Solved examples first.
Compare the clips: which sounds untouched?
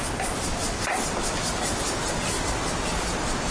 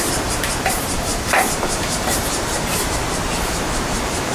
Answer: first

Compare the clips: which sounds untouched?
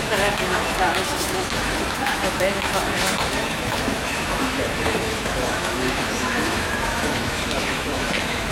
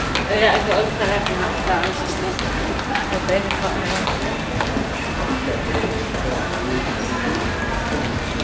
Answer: second